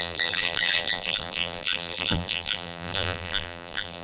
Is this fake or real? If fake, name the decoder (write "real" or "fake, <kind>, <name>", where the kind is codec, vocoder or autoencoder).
fake, vocoder, BigVGAN v2